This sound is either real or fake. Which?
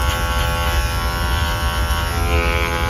real